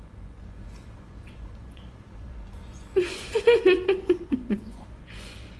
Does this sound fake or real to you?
fake